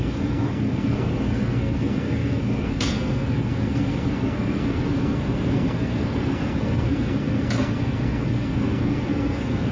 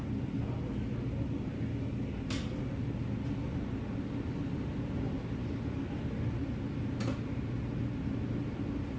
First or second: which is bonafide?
second